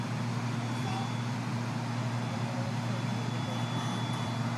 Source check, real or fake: fake